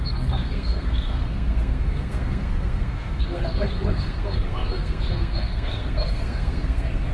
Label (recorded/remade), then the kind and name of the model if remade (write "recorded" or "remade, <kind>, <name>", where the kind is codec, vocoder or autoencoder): remade, codec, SNAC